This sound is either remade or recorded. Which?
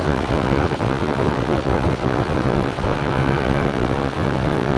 remade